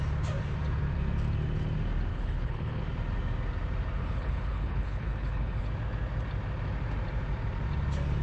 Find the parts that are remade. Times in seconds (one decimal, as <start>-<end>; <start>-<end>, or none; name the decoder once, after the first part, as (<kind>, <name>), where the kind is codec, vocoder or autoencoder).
2.1-2.8 (codec, HILCodec); 4.0-5.7